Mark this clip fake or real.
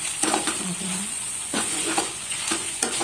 fake